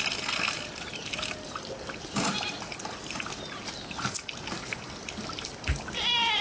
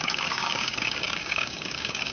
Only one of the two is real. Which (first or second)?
first